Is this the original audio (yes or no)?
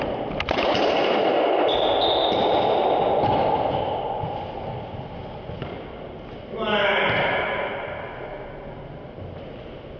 yes